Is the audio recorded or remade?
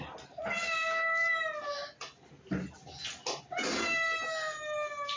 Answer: recorded